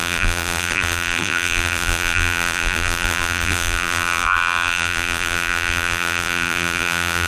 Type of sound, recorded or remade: remade